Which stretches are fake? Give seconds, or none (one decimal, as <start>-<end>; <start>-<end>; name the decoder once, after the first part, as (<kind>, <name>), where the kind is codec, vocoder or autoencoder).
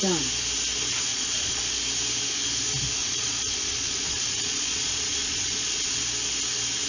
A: 1.1-1.6 (vocoder, Vocos); 3.0-6.0